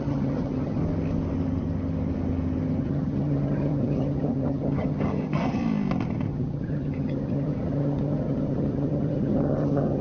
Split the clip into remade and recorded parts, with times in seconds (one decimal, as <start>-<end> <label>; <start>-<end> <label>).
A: 0.0-0.8 remade; 0.8-2.8 recorded; 2.8-5.6 remade; 5.6-6.3 recorded; 6.3-10.0 remade